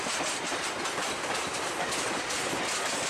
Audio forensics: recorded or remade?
recorded